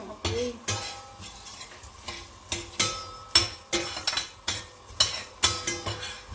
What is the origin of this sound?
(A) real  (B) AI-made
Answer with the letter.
A